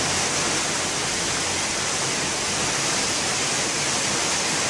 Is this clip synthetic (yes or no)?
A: no